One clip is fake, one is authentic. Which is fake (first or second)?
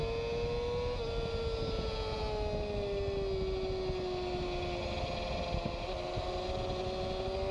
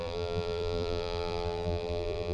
second